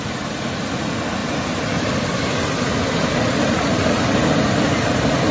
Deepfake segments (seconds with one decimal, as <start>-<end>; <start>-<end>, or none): none